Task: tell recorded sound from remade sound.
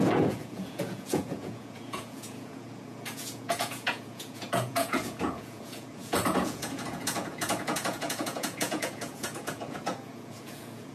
remade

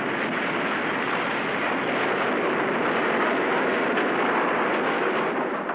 recorded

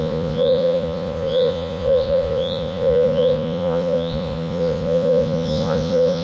remade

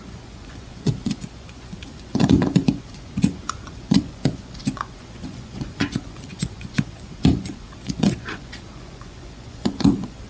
remade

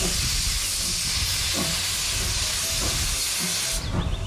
recorded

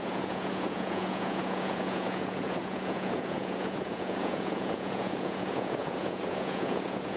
remade